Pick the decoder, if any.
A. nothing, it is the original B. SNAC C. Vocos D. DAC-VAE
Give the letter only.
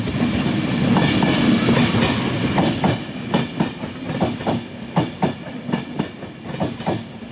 A